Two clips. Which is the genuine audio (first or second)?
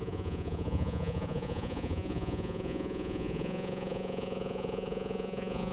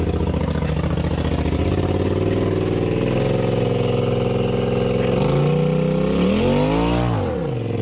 second